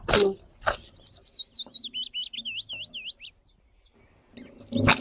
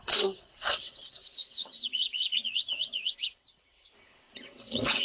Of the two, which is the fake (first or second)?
second